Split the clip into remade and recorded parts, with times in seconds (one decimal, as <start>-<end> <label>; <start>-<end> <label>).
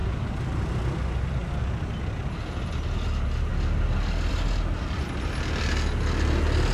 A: 0.0-6.7 recorded